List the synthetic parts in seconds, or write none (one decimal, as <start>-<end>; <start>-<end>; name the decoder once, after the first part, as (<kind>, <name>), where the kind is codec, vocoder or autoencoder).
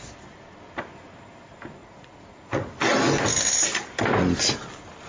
1.8-2.7 (vocoder, Vocos)